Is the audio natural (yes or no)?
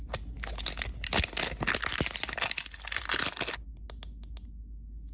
yes